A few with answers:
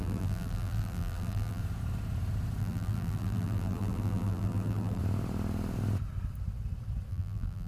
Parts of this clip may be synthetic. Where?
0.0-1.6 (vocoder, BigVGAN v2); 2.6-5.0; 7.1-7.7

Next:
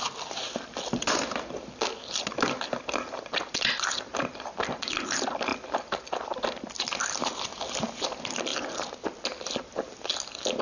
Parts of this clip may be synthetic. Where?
none

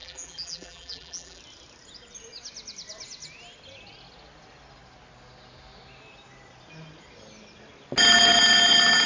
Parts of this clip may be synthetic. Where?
0.0-1.4 (vocoder, BigVGAN v2)

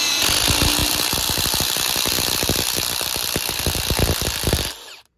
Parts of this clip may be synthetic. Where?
0.8-3.6 (vocoder, BigVGAN v2)

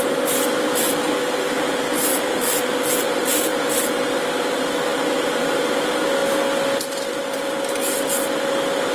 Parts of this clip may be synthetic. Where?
2.1-2.6 (vocoder, BigVGAN v2)

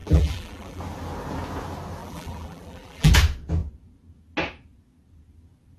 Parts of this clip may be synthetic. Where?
0.0-0.8 (vocoder, BigVGAN v2); 2.0-3.1

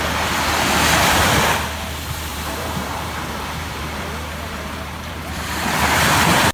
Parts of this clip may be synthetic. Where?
2.3-5.2 (vocoder, BigVGAN v2)

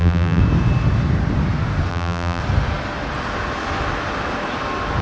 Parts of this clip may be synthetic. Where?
0.0-0.4 (vocoder, BigVGAN v2); 1.9-2.4